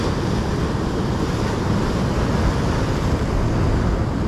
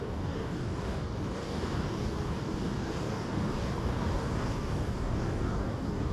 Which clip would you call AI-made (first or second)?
second